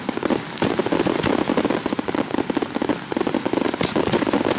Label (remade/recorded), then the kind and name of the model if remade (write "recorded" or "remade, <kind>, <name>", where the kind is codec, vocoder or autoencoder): recorded